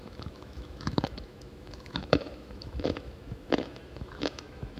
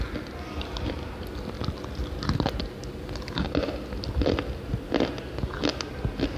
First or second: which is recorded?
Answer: second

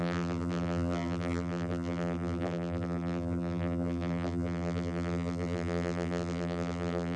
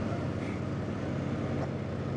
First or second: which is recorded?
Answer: second